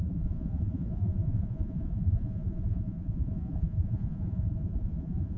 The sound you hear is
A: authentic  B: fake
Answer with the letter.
B